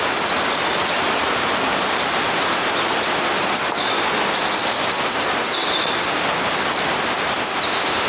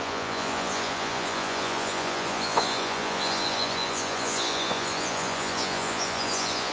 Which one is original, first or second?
first